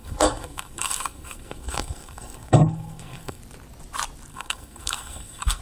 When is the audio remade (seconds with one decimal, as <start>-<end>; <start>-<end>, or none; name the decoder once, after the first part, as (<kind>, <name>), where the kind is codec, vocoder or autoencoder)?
0.0-3.4 (codec, SNAC); 4.3-5.6